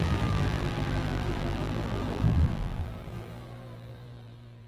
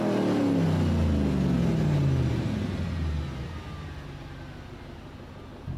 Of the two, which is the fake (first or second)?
first